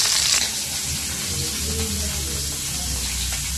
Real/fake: real